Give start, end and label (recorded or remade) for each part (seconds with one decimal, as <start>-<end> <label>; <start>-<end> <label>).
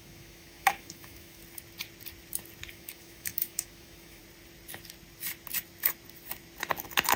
0.0-1.4 remade; 1.4-2.7 recorded; 2.7-4.2 remade; 4.2-7.2 recorded